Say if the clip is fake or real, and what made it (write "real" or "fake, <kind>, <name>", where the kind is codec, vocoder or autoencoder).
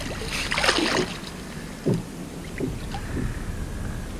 real